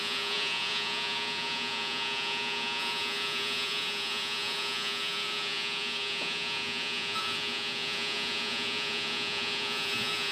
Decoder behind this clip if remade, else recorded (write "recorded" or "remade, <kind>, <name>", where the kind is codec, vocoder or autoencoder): remade, vocoder, Vocos